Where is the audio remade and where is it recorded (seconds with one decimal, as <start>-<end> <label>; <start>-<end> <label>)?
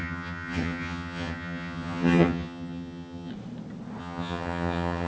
0.0-3.3 remade; 3.3-4.0 recorded; 4.0-5.1 remade